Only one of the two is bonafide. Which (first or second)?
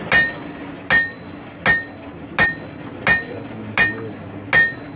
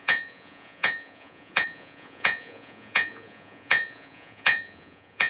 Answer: first